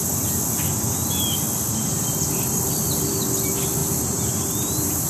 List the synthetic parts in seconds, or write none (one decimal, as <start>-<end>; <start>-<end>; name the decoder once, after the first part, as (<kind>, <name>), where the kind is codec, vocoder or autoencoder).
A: 3.8-5.1 (vocoder, BigVGAN v2)